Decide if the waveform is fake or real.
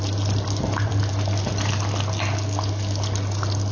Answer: real